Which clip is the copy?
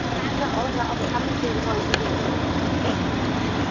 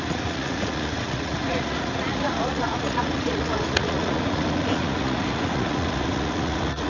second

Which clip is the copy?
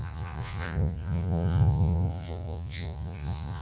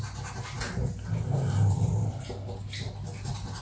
first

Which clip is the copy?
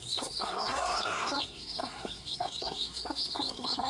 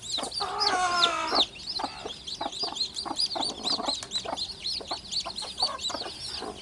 first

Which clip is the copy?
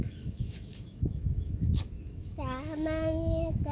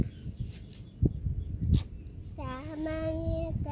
first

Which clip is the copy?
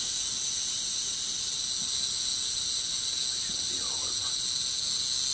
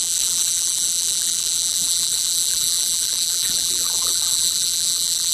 second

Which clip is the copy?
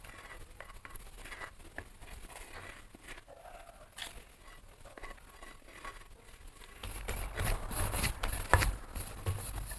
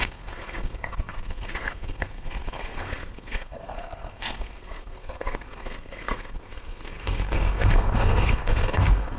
second